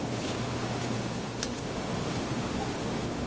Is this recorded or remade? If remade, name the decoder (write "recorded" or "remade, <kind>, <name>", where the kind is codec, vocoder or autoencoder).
remade, autoencoder, DAC-VAE